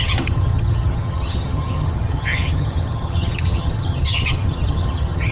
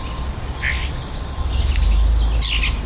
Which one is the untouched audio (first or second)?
second